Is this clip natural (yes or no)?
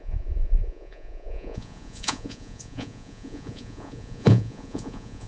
no